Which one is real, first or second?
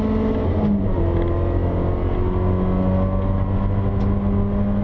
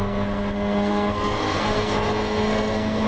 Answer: first